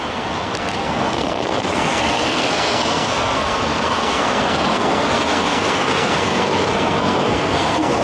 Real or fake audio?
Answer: fake